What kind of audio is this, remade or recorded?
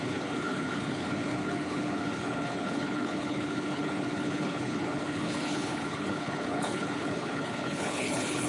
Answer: remade